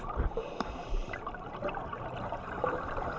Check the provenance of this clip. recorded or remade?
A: remade